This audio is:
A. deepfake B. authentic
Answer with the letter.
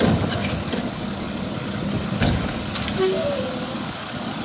A